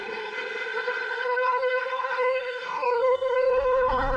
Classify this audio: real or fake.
fake